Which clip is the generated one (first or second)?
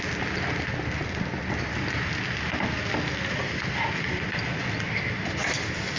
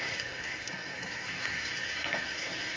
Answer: second